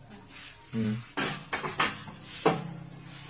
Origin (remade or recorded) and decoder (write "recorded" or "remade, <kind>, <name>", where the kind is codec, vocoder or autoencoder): recorded